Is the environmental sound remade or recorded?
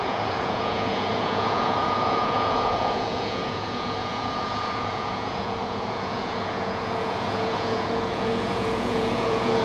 remade